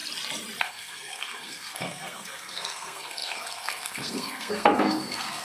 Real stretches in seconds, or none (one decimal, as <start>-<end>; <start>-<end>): 0.0-0.6